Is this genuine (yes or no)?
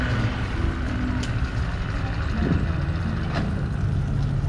yes